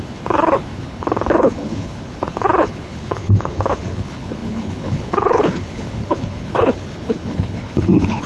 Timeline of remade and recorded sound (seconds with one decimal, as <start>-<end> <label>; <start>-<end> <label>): 0.0-8.3 remade

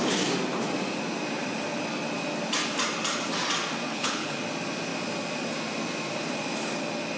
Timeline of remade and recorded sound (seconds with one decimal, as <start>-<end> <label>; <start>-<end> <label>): 0.0-3.9 recorded; 3.9-4.4 remade; 4.4-7.2 recorded

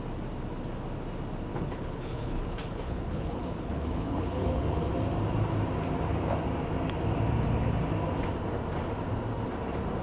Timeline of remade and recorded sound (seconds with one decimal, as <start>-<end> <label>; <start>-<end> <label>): 0.0-1.5 recorded; 1.5-4.9 remade; 4.9-10.0 recorded

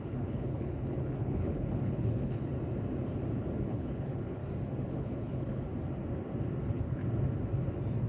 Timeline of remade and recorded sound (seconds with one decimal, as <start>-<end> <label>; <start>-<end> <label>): 0.0-2.5 remade; 2.5-3.6 recorded; 3.6-4.4 remade; 4.4-4.9 recorded; 4.9-5.7 remade; 5.7-6.6 recorded; 6.6-7.0 remade; 7.0-8.1 recorded

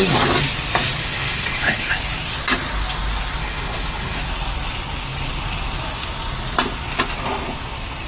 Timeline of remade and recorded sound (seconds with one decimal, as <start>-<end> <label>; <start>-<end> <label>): 0.0-1.0 recorded; 1.0-1.9 remade; 1.9-3.4 recorded; 3.4-4.2 remade; 4.2-8.1 recorded

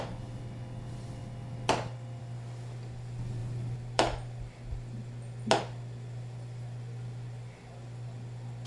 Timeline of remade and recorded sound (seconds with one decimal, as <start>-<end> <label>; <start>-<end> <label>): 0.0-8.7 recorded